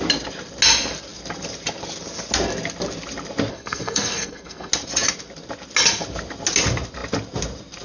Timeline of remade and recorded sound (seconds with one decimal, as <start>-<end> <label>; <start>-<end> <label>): 0.0-3.5 recorded; 3.5-4.7 remade; 4.7-7.8 recorded